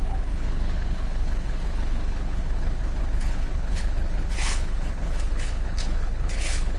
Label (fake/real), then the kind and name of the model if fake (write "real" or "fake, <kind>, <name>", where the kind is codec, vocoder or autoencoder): fake, codec, HILCodec